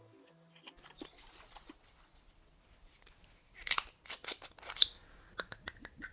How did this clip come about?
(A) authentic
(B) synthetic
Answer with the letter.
A